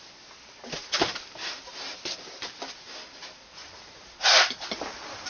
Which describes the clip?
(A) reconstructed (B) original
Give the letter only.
B